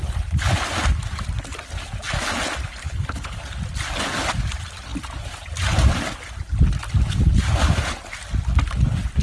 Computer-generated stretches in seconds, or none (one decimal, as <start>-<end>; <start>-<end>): 2.8-3.4